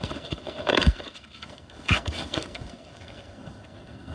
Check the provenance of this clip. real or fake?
fake